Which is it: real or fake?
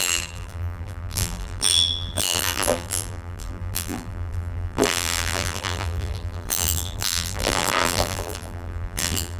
fake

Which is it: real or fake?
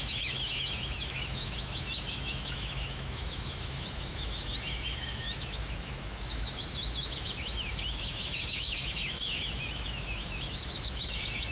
fake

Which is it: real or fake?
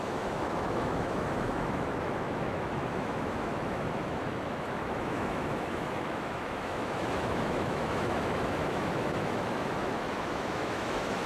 fake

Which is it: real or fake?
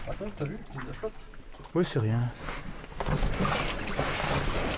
real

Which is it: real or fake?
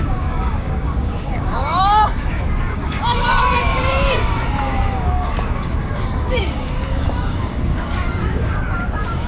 fake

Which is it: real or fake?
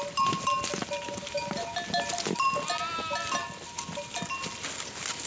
real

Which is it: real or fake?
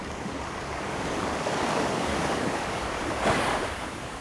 fake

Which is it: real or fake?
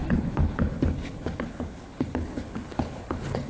fake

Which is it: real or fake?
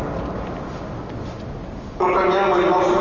real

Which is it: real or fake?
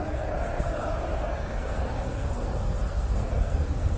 fake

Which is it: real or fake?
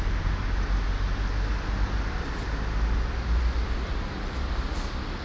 real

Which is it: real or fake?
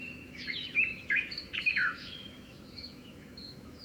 fake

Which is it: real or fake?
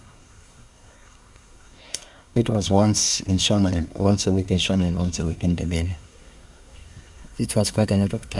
fake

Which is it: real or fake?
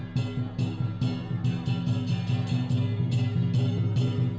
real